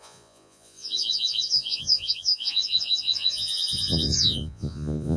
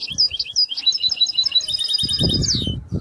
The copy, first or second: first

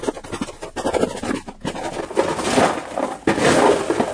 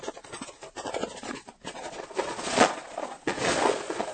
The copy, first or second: second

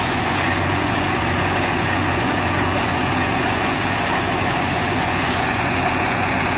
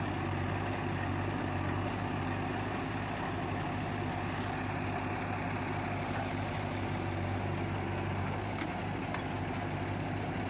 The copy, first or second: first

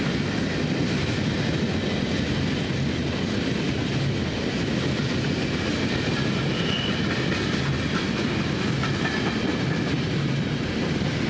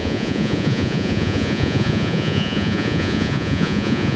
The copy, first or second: second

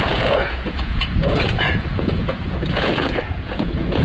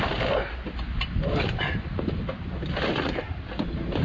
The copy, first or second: first